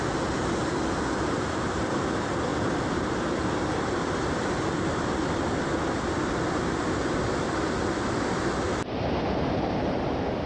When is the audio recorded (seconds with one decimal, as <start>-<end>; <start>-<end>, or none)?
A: 0.0-10.5